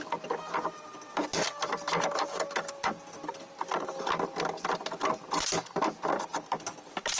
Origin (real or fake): real